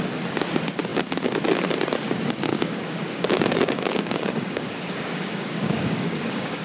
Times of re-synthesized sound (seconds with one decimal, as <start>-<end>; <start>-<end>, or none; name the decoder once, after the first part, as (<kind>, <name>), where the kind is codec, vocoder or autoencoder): 2.5-6.6 (codec, DAC)